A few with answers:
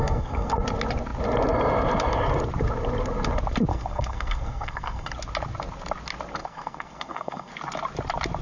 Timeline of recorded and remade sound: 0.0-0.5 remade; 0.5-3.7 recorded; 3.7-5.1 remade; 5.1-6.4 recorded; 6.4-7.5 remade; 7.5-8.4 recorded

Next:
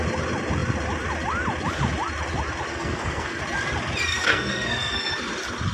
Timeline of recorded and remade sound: 0.0-2.7 recorded; 2.7-3.4 remade; 3.4-4.1 recorded; 4.1-5.1 remade; 5.1-5.7 recorded

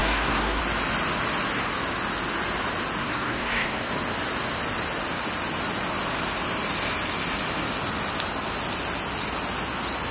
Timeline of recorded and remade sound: 0.0-0.6 remade; 0.6-3.0 recorded; 3.0-3.9 remade; 3.9-10.1 recorded

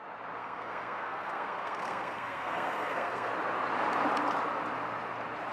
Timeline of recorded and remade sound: 0.0-0.4 recorded; 0.4-3.3 remade; 3.3-5.5 recorded

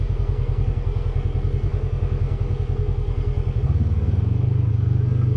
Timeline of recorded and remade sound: 0.0-5.4 remade